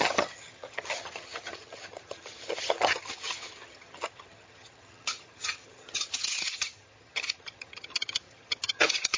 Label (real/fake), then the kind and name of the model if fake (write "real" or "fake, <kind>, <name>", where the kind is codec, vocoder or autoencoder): fake, vocoder, HiFi-GAN